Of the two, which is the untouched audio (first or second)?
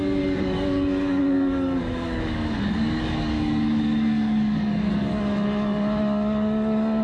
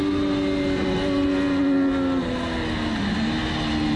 second